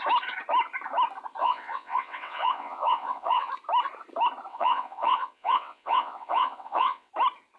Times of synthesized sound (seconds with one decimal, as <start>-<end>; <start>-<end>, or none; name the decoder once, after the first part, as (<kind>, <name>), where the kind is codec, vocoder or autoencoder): 1.4-3.5 (vocoder, WaveNeXt); 4.5-7.1